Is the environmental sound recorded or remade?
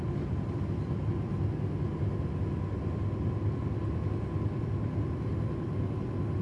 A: recorded